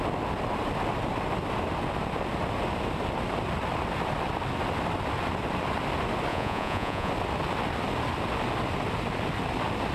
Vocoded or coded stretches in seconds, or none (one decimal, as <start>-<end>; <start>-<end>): 6.3-7.1